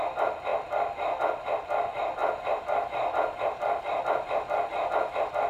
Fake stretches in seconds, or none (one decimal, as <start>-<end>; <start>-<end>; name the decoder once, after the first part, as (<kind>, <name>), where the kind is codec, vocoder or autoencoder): none